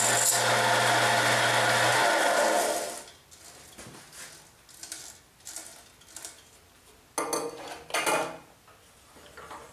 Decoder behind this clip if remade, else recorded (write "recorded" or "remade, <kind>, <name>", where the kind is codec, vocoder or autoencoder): recorded